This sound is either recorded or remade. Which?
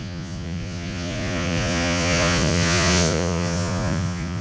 remade